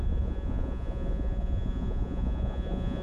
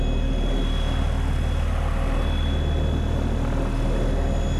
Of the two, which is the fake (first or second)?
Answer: first